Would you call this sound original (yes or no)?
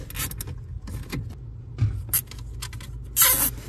yes